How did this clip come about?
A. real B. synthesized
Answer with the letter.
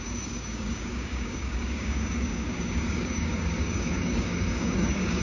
B